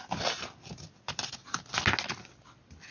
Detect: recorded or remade recorded